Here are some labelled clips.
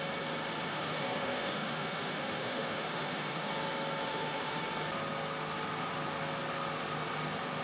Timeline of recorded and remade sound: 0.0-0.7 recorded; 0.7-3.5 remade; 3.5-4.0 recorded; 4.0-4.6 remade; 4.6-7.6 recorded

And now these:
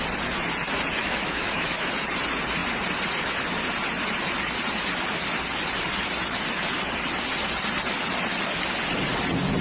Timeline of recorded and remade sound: 0.0-1.0 recorded; 1.0-1.9 remade; 1.9-9.6 recorded